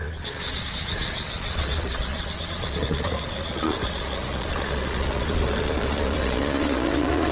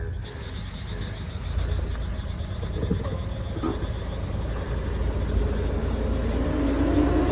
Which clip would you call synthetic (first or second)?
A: first